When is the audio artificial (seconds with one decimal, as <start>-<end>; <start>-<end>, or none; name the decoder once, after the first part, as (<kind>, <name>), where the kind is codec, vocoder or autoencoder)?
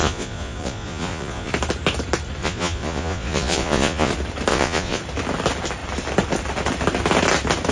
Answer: 0.0-1.5 (vocoder, Vocos); 2.4-4.1; 4.5-5.0